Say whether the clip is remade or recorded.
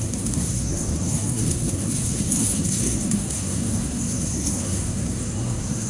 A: remade